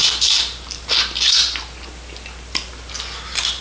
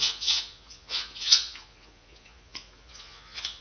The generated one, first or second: second